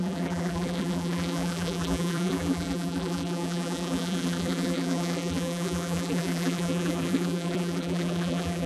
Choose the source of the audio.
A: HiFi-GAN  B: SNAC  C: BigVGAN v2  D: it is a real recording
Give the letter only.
C